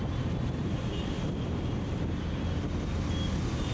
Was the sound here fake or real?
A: real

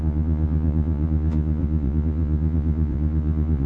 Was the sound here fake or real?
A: fake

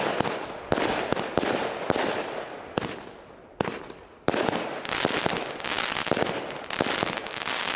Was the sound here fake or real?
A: real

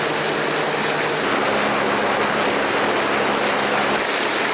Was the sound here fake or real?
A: real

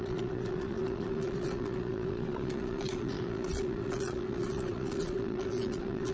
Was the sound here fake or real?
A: fake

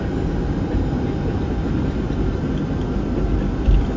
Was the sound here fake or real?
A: real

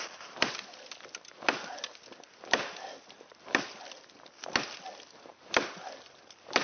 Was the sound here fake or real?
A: real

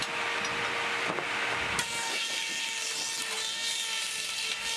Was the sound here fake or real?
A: real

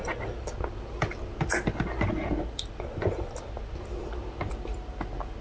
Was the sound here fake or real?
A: real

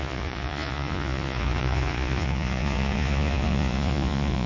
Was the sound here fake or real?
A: fake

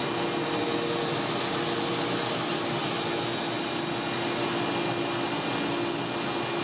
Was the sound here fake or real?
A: real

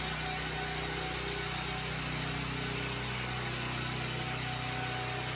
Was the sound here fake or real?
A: real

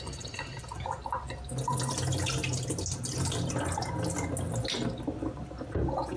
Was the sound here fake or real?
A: real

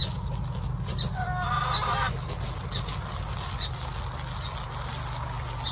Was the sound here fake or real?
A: real